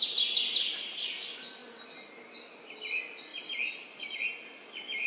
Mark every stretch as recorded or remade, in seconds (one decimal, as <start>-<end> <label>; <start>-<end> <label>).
0.0-5.1 recorded